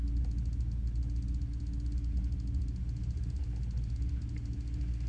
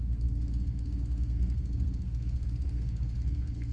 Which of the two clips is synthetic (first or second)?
second